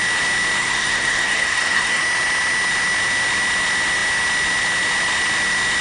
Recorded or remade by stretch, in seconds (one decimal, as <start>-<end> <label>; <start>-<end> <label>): 0.0-0.6 recorded; 0.6-2.0 remade; 2.0-5.8 recorded